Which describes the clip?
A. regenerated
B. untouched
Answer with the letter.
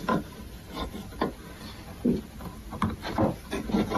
A